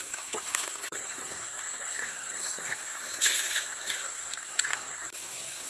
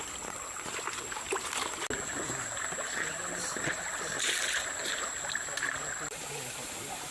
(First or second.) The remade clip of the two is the first